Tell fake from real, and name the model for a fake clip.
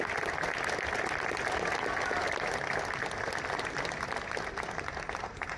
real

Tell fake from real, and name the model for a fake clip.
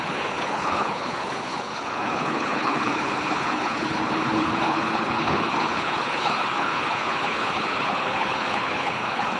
fake, codec, HILCodec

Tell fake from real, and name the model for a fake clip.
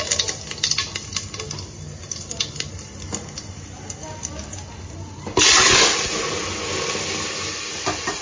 real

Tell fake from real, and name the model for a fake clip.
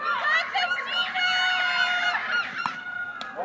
real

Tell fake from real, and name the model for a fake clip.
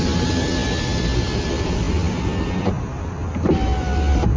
real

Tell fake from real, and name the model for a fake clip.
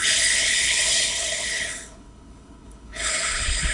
fake, codec, HILCodec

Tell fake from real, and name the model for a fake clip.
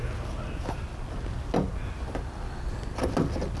real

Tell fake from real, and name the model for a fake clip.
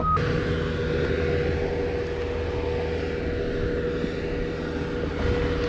real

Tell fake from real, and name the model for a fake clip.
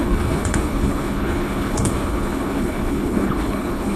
fake, codec, HILCodec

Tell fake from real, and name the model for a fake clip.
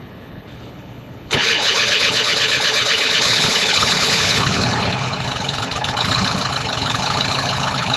fake, codec, HILCodec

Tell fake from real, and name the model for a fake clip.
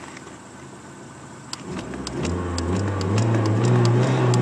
real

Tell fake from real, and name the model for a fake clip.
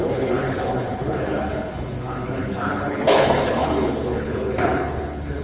fake, codec, HILCodec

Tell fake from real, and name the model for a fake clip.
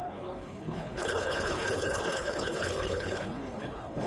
fake, codec, HILCodec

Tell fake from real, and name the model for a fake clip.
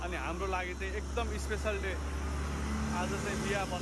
real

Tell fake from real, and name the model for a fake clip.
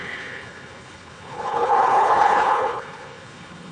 fake, codec, HILCodec